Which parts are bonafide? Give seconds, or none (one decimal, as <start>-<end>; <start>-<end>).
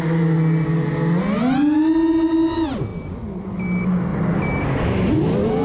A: 0.0-5.6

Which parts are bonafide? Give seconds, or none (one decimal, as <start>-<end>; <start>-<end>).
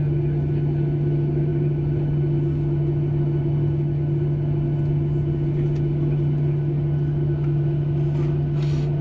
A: 0.0-9.0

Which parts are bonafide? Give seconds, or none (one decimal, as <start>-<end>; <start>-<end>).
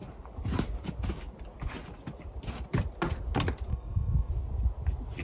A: 0.0-3.7; 4.3-5.2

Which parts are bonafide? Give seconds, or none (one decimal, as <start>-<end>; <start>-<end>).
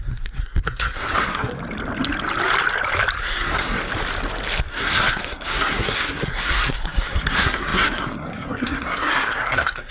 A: 1.6-3.2; 3.8-4.7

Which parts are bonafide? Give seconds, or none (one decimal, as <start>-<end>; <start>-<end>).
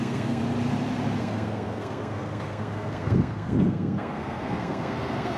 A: 0.4-1.2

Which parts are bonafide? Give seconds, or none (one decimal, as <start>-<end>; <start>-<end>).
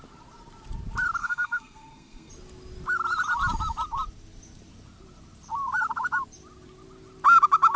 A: 0.0-1.2; 2.3-7.8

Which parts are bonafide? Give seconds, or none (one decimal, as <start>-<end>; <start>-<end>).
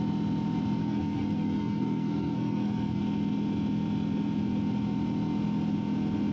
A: 0.0-0.8; 3.0-6.3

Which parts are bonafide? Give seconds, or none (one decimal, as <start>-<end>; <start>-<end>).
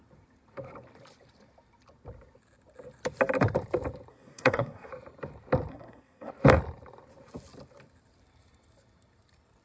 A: 0.0-4.1; 4.9-5.7; 6.3-9.6